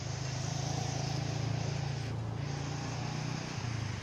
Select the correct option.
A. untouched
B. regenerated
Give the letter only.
A